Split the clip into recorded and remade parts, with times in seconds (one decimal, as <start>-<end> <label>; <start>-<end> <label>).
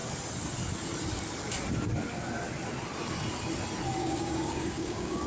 0.0-4.0 recorded; 4.0-5.3 remade